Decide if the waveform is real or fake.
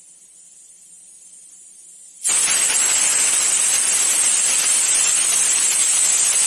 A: real